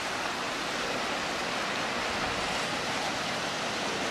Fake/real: real